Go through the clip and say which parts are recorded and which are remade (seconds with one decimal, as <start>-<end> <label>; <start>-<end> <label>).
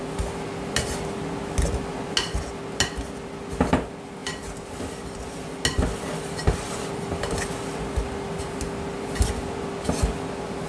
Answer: 0.0-10.7 recorded